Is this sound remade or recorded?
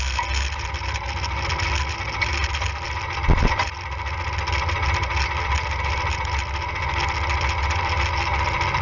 recorded